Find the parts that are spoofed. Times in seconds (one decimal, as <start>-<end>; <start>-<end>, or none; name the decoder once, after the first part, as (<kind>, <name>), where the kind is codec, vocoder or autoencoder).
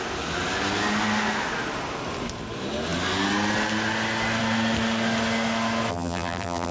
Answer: 5.9-6.7 (vocoder, BigVGAN v2)